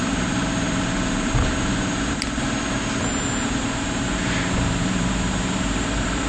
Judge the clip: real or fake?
fake